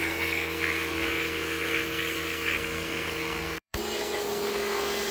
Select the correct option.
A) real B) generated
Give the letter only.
B